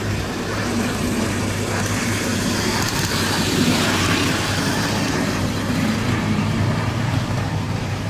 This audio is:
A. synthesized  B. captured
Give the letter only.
A